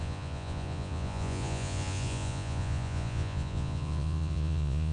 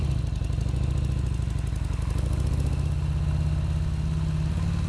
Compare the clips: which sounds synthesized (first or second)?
first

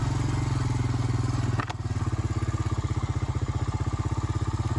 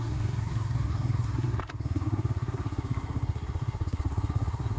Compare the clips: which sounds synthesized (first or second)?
second